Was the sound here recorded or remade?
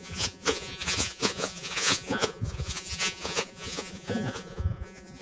remade